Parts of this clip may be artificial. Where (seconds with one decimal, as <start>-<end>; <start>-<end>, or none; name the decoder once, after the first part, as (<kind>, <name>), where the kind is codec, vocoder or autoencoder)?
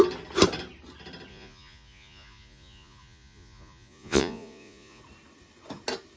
1.3-5.0 (vocoder, Vocos)